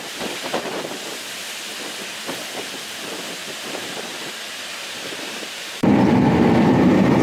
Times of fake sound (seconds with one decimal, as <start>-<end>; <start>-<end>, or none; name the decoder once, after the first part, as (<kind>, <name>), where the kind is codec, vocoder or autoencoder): 0.5-1.3 (vocoder, BigVGAN v2); 3.4-7.2